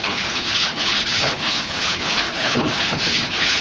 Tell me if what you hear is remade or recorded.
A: remade